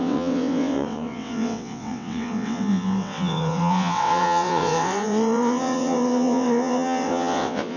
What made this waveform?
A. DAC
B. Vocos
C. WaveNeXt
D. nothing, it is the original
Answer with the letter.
C